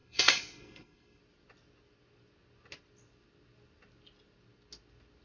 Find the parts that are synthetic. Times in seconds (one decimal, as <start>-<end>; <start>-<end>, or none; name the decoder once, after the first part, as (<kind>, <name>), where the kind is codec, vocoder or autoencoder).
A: 0.0-1.2 (codec, SNAC)